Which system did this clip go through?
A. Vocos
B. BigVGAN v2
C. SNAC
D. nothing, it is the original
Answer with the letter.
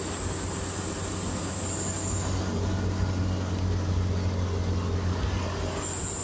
D